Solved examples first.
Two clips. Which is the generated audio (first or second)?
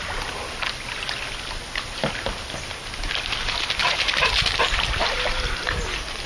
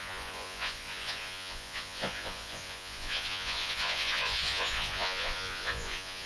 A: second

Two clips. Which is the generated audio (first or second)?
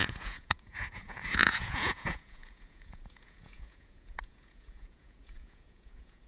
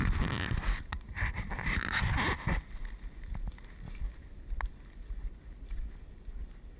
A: first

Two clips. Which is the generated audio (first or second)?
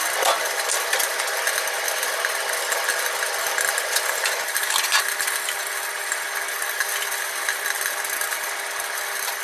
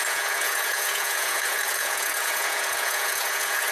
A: second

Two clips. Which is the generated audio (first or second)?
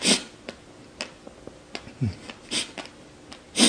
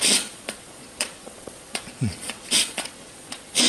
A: second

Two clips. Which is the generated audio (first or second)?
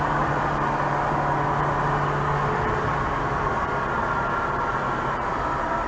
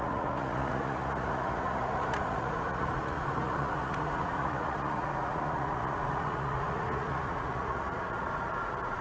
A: second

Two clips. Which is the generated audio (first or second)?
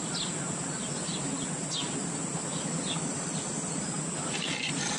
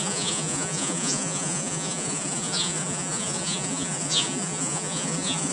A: second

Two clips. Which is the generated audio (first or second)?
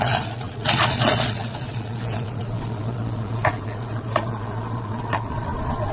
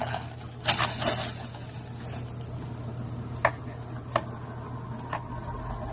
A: first